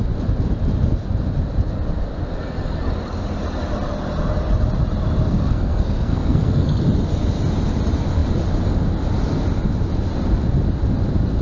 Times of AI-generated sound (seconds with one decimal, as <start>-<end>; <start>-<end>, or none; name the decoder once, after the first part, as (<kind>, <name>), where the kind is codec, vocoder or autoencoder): 5.3-6.8 (codec, SNAC)